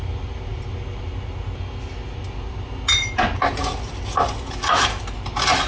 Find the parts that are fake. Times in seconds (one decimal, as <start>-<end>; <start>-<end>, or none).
none